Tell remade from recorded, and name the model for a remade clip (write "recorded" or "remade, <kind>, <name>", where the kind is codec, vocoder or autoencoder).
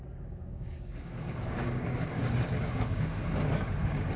remade, codec, DAC